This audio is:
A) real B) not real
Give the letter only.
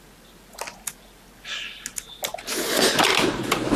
A